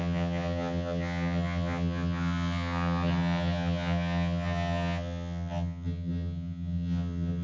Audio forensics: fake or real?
fake